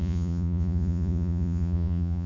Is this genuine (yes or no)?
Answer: no